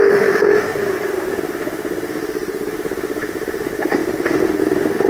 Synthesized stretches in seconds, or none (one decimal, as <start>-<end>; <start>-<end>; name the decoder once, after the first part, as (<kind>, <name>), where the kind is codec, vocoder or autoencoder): 0.0-2.2 (autoencoder, DAC-VAE); 2.7-5.1